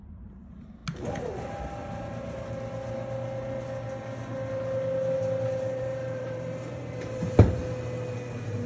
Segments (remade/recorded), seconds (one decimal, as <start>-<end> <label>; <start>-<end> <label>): 0.0-0.8 remade; 0.8-5.1 recorded; 5.1-7.6 remade; 7.6-8.7 recorded